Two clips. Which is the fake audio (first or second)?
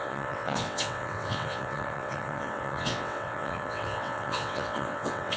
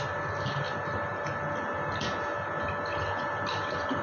first